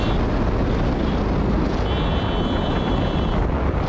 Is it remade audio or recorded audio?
recorded